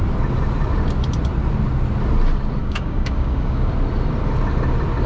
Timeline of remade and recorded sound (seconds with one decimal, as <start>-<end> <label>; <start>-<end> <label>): 0.0-2.6 recorded; 2.6-3.7 remade; 3.7-5.1 recorded

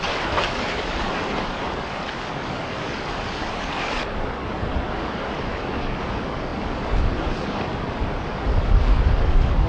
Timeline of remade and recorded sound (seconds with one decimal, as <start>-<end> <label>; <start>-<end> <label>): 0.0-9.7 remade

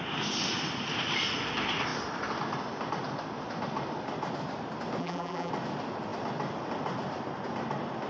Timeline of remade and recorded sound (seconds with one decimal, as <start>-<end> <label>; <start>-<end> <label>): 0.0-5.0 recorded; 5.0-5.5 remade; 5.5-8.1 recorded

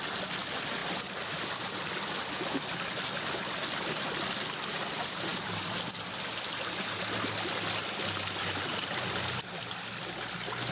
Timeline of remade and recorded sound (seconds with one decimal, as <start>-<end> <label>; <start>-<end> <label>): 0.0-10.7 recorded

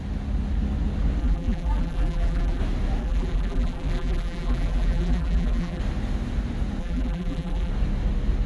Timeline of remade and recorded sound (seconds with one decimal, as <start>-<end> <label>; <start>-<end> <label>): 0.0-1.2 recorded; 1.2-2.6 remade; 2.6-3.0 recorded; 3.0-5.8 remade; 5.8-6.8 recorded; 6.8-7.7 remade; 7.7-8.5 recorded

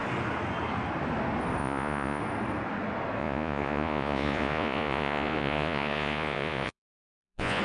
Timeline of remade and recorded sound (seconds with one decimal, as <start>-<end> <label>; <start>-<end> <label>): 0.0-1.6 recorded; 1.6-2.2 remade; 2.2-3.2 recorded; 3.2-7.6 remade